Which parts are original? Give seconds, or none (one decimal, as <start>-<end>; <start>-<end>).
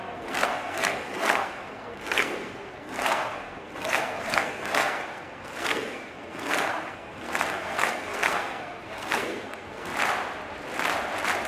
9.9-11.5